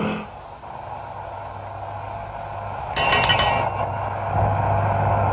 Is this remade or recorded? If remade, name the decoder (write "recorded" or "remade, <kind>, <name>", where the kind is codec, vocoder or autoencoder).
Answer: recorded